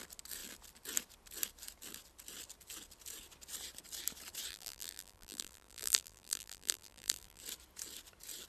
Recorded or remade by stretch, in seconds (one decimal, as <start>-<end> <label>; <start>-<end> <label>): 0.0-4.5 recorded; 4.5-7.4 remade; 7.4-8.5 recorded